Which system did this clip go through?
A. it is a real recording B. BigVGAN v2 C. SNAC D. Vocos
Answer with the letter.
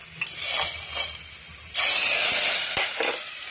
A